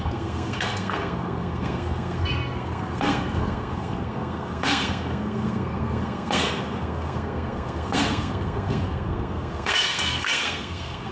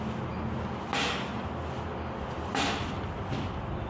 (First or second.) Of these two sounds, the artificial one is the first